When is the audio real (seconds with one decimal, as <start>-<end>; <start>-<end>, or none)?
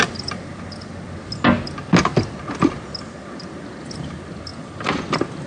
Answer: 0.0-5.5